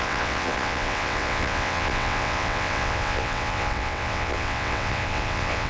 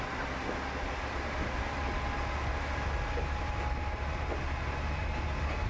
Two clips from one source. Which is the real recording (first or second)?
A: second